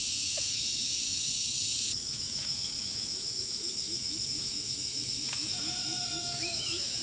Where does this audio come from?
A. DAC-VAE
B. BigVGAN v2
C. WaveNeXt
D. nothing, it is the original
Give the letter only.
A